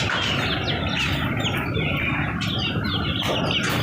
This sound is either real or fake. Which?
real